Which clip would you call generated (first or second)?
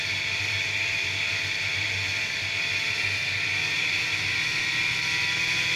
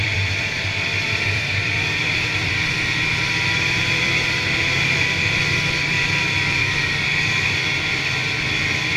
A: second